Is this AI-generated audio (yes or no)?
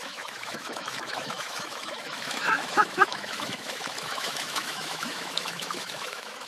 yes